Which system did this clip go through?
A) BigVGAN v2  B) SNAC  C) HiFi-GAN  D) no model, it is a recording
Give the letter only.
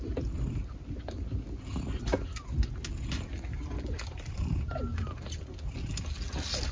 D